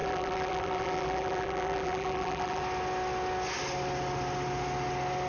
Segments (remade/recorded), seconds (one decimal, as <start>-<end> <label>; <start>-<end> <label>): 0.0-2.6 remade; 2.6-5.3 recorded